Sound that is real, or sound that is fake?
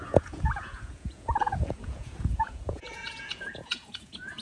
fake